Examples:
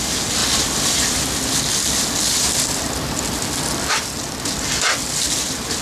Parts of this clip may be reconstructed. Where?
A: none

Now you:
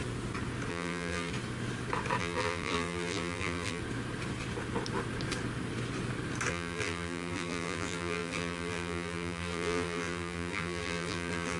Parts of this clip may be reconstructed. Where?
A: 0.7-1.3; 2.2-3.8; 6.5-11.6

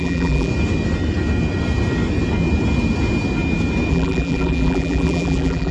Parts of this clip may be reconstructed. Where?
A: 0.0-0.5; 3.9-5.7

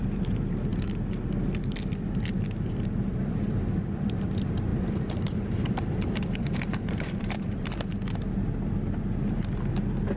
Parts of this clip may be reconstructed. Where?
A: 4.7-7.8

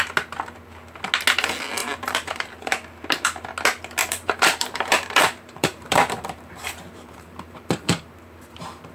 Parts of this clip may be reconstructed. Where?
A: 1.8-2.9; 4.0-8.9

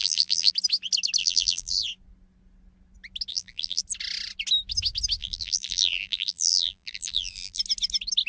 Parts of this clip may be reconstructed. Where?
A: 0.0-0.5; 1.2-1.7; 3.3-3.8; 5.2-7.6

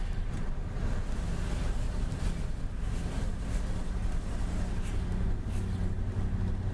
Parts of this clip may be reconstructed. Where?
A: none